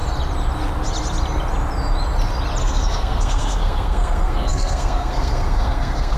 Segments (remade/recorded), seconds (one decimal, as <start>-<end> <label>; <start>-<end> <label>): 0.0-2.6 recorded; 2.6-6.2 remade